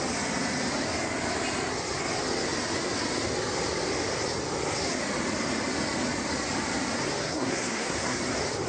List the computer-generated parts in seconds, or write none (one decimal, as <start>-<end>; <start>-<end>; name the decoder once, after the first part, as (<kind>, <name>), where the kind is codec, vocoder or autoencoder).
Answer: 7.2-8.2 (codec, SNAC)